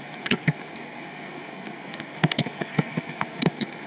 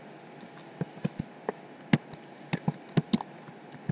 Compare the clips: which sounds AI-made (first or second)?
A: first